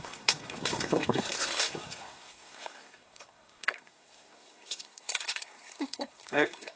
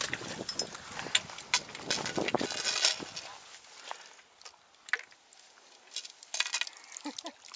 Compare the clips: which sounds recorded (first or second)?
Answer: second